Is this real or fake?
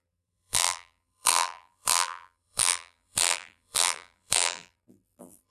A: fake